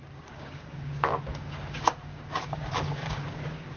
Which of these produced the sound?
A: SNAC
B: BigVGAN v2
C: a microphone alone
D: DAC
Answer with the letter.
D